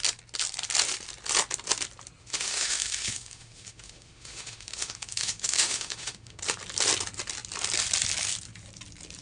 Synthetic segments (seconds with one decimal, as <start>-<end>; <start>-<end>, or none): 2.2-6.4